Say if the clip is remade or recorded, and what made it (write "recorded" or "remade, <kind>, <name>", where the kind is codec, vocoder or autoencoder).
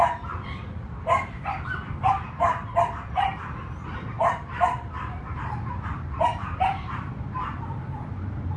remade, vocoder, BigVGAN v2